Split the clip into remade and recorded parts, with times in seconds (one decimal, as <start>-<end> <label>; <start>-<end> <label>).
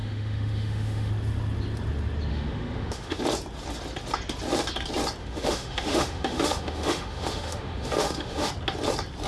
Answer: 0.0-1.1 remade; 1.1-2.3 recorded; 2.3-3.2 remade; 3.2-5.2 recorded; 5.2-8.5 remade; 8.5-9.3 recorded